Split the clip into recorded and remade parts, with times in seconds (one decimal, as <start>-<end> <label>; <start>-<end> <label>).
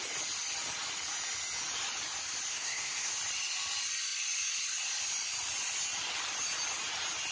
0.0-2.5 recorded; 2.5-3.1 remade; 3.1-7.3 recorded